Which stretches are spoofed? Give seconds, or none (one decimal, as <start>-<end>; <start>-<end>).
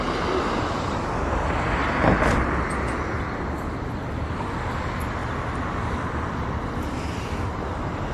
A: none